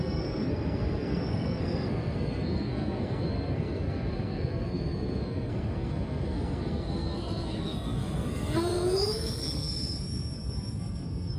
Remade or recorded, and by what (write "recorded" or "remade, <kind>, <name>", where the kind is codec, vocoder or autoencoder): remade, codec, SNAC